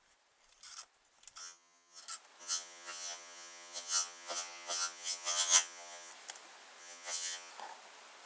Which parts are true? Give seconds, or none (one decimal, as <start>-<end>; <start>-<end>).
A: 0.0-1.4; 2.0-2.4; 6.1-6.8; 7.5-8.3